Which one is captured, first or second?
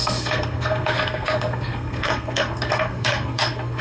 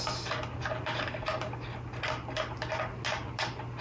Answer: second